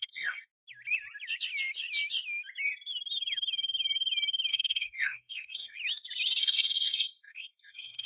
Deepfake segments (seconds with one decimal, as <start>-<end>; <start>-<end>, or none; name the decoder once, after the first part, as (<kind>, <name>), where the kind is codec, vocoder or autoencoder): 0.0-0.5 (codec, SNAC); 4.5-5.8; 6.4-8.1